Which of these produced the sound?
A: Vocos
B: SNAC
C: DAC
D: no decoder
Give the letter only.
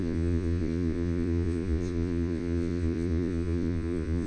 A